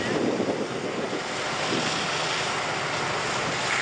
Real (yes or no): yes